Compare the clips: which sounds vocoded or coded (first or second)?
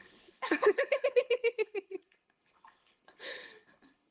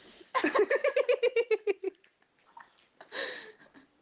first